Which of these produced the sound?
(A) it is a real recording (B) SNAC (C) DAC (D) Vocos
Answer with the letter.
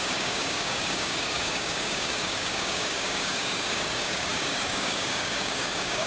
C